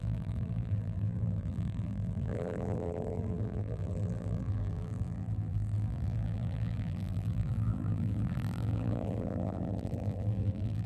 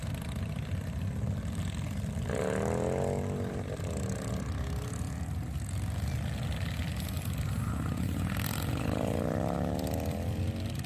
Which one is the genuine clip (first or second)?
second